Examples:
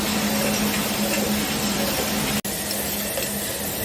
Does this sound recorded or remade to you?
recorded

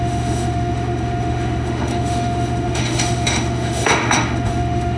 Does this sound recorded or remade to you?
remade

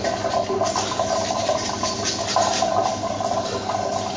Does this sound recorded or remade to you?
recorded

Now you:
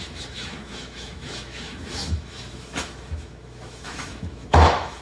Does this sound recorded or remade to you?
remade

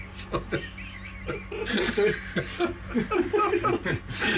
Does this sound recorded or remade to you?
recorded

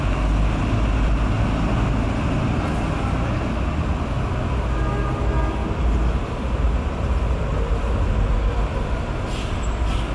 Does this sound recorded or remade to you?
recorded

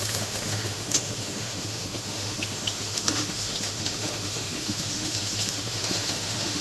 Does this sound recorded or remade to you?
remade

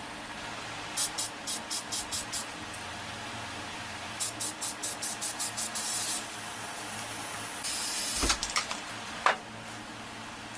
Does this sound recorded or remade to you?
recorded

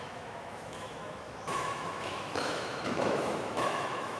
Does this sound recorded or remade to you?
remade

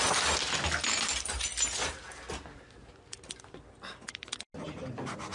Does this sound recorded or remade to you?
recorded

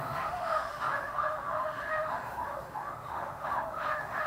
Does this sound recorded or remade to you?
remade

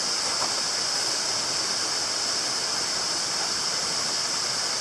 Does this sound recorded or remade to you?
recorded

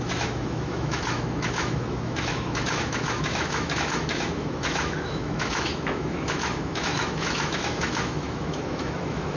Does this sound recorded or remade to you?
remade